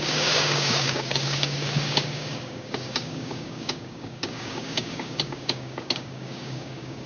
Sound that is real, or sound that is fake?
fake